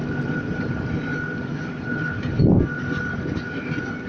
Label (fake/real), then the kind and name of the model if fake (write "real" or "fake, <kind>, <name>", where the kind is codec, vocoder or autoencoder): real